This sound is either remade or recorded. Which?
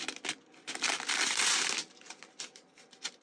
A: recorded